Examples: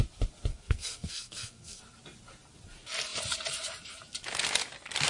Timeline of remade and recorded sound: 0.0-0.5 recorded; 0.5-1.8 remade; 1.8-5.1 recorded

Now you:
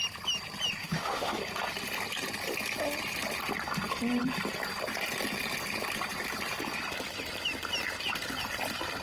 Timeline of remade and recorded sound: 0.0-0.8 recorded; 0.8-1.4 remade; 1.4-9.0 recorded

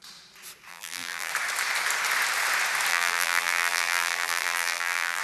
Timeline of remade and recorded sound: 0.0-0.7 recorded; 0.7-1.3 remade; 1.3-2.9 recorded; 2.9-5.2 remade

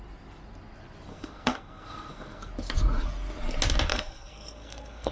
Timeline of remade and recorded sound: 0.0-1.1 recorded; 1.1-2.5 remade; 2.5-3.9 recorded; 3.9-5.1 remade